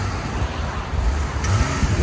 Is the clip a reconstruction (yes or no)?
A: no